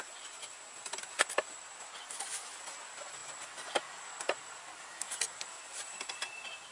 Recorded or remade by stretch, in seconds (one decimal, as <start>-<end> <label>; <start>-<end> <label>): 0.0-6.7 recorded